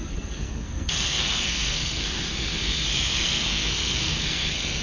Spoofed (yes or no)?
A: yes